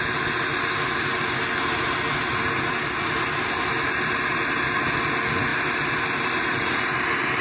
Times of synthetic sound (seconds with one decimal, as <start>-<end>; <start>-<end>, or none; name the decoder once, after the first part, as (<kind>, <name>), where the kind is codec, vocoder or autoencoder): 5.5-7.0 (vocoder, BigVGAN v2)